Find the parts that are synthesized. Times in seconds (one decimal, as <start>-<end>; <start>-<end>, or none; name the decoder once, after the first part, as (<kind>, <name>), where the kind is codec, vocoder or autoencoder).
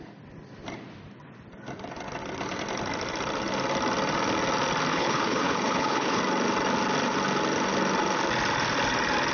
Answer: 4.9-6.2 (codec, HILCodec)